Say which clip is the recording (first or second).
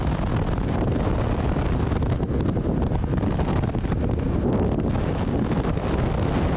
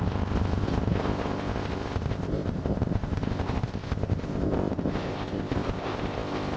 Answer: first